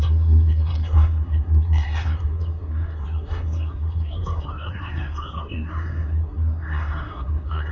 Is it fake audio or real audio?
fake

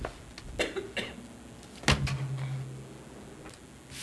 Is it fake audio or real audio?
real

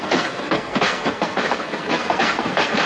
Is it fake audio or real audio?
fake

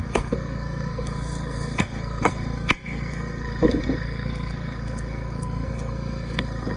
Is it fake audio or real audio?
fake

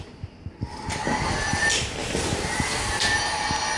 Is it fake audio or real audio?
real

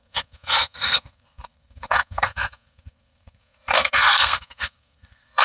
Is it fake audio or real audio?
fake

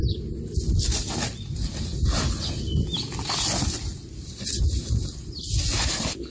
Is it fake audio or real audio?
real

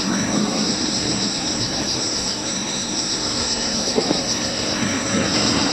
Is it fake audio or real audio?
fake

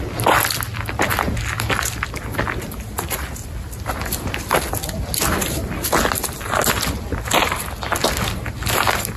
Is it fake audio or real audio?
real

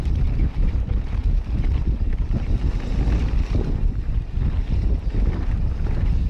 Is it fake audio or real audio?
real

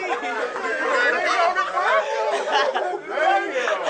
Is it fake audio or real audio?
real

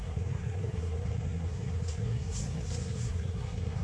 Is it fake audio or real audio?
fake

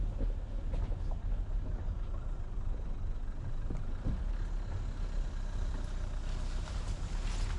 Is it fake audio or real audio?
real